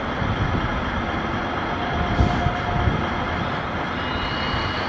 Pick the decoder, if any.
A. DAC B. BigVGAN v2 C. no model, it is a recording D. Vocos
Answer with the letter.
C